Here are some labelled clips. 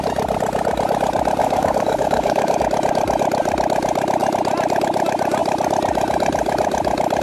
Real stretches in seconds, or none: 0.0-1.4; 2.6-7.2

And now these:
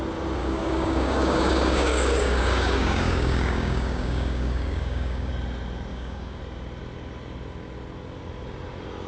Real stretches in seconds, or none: 0.0-0.4; 5.3-5.9; 6.4-9.1

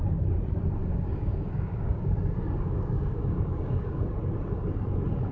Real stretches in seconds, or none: 0.0-0.8; 4.0-5.3

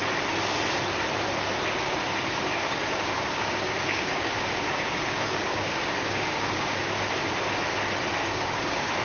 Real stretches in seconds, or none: 0.0-2.5; 7.1-8.2

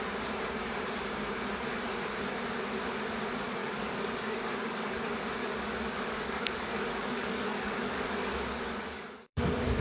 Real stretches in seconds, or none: 0.0-3.6; 5.0-5.4

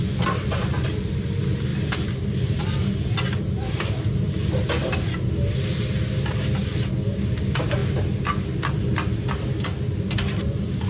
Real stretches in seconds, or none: 0.0-10.9